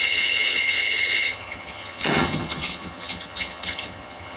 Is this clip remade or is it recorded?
remade